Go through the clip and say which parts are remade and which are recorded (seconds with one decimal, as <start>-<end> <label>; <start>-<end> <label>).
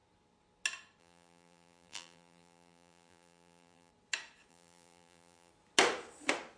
0.0-1.0 recorded; 1.0-3.9 remade; 3.9-4.5 recorded; 4.5-5.5 remade; 5.5-6.6 recorded